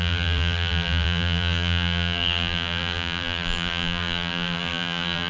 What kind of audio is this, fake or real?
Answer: fake